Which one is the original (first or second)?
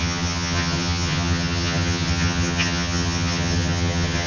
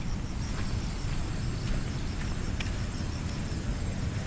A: second